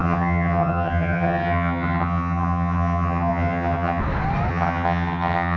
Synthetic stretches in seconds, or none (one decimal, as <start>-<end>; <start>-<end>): 0.0-4.0; 4.5-5.6